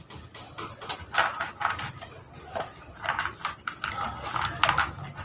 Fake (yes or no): no